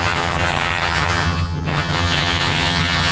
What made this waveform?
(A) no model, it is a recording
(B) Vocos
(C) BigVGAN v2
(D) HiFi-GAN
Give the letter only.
D